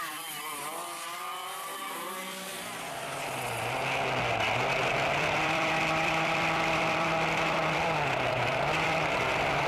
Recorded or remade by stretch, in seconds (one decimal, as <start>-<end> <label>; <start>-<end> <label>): 0.0-2.5 remade; 2.5-4.8 recorded; 4.8-9.7 remade